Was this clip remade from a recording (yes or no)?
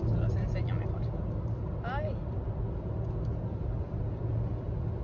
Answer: no